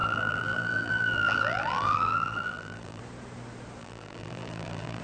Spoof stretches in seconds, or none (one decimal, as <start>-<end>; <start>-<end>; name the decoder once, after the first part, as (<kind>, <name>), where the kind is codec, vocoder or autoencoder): 0.0-3.0 (vocoder, BigVGAN v2); 3.8-5.0

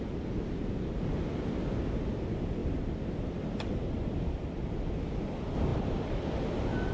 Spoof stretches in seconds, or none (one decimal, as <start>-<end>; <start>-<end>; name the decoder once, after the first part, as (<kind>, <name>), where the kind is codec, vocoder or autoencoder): 2.6-4.9 (vocoder, BigVGAN v2); 5.7-6.3

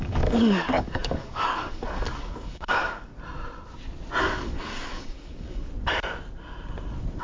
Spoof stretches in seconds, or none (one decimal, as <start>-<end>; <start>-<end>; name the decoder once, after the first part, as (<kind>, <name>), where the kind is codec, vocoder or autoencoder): 0.0-3.1 (codec, DAC); 4.2-5.7

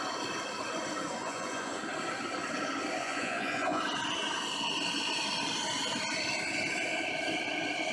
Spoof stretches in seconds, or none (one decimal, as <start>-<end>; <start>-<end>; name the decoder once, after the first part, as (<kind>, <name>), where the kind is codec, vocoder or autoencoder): 1.2-1.8 (vocoder, Vocos); 3.0-3.8

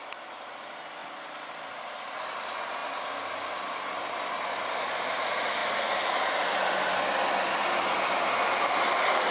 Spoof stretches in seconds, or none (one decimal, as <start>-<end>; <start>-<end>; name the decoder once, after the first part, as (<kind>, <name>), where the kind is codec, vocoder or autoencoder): none